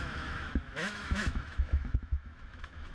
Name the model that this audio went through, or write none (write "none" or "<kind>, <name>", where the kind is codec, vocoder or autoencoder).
autoencoder, DAC-VAE